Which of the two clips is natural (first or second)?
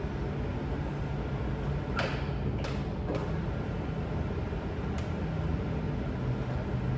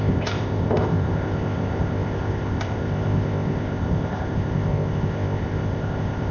first